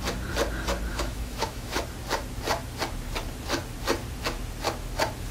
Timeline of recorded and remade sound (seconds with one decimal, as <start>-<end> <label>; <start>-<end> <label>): 0.0-0.9 recorded; 0.9-1.8 remade; 1.8-5.3 recorded